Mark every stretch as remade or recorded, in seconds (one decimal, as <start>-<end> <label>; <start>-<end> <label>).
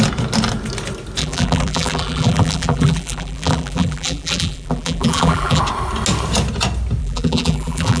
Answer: 0.0-1.2 recorded; 1.2-5.6 remade; 5.6-7.0 recorded; 7.0-8.0 remade